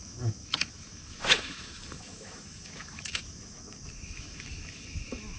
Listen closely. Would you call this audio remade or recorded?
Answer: remade